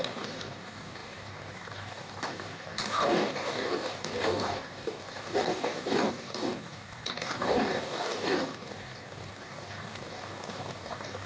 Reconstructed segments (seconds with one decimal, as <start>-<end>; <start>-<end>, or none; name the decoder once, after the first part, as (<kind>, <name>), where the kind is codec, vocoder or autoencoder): 0.0-11.3 (codec, DAC)